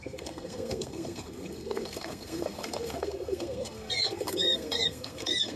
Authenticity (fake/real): fake